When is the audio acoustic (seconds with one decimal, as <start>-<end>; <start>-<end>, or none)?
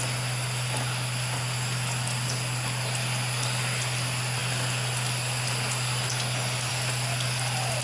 0.0-7.8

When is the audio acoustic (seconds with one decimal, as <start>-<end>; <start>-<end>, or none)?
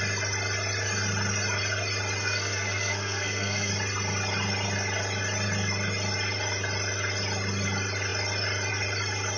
0.0-2.2; 3.7-9.4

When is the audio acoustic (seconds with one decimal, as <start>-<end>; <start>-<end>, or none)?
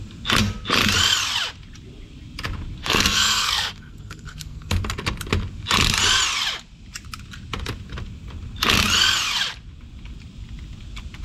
0.0-2.8; 4.8-11.2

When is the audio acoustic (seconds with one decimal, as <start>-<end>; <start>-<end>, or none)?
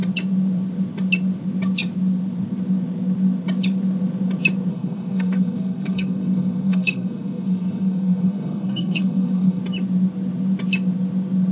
0.0-4.7; 9.6-11.5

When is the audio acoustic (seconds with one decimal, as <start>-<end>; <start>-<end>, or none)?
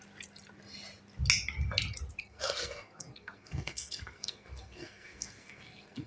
0.0-2.2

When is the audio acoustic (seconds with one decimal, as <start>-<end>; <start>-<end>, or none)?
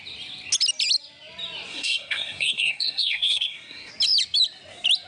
0.0-1.7; 3.9-5.1